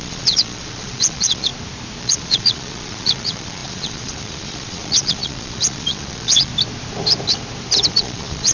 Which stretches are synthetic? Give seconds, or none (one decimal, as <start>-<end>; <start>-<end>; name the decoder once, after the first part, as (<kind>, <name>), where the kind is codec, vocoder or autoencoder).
0.0-1.5 (vocoder, Vocos); 2.0-6.5; 7.9-8.5